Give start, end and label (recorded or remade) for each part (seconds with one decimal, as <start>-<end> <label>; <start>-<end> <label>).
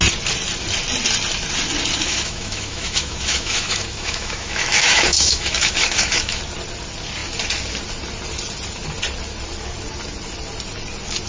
0.0-2.0 recorded; 2.0-6.4 remade; 6.4-11.3 recorded